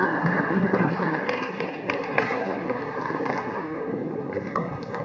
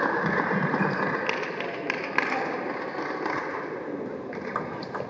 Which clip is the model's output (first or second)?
first